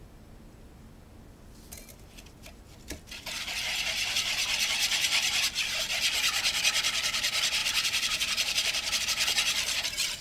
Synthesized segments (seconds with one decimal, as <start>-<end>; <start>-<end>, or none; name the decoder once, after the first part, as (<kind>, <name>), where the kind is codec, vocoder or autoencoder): 7.6-9.0 (vocoder, BigVGAN v2)